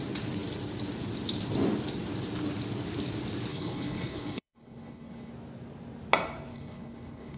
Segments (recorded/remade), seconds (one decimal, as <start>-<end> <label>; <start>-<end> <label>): 0.0-3.5 recorded; 3.5-5.3 remade; 5.3-6.5 recorded; 6.5-7.4 remade